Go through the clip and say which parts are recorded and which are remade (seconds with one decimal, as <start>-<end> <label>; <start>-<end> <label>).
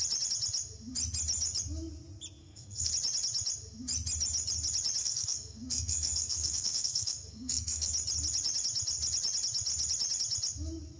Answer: 0.0-2.4 recorded; 2.4-2.9 remade; 2.9-5.0 recorded; 5.0-7.9 remade; 7.9-11.0 recorded